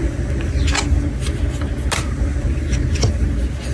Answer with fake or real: real